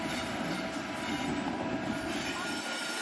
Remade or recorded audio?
recorded